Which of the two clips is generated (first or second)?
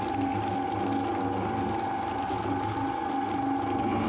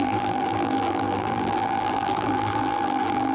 second